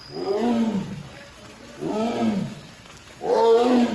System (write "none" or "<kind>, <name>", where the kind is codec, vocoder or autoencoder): none